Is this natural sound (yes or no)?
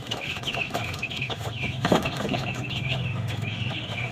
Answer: no